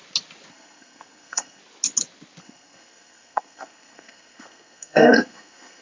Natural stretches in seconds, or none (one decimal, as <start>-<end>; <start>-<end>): 0.0-0.5; 1.6-2.4